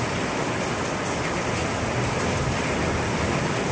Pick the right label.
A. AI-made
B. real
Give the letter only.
B